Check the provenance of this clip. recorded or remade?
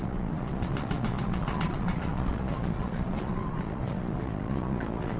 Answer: remade